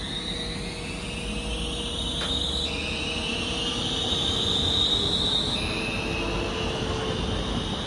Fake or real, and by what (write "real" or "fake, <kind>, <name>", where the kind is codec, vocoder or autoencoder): real